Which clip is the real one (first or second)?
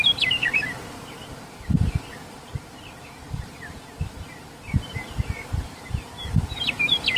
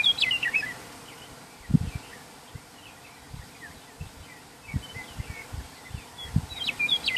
second